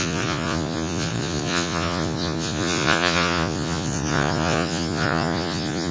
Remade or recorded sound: remade